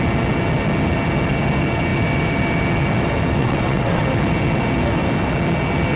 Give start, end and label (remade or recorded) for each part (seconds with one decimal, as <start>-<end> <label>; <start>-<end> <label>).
0.0-3.4 recorded; 3.4-4.0 remade; 4.0-6.0 recorded